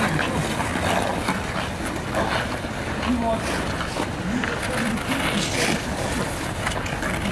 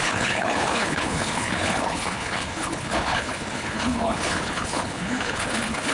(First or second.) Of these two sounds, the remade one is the second